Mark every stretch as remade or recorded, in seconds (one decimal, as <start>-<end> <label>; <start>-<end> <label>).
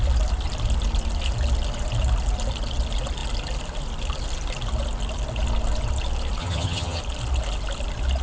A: 0.0-6.4 recorded; 6.4-7.0 remade; 7.0-8.2 recorded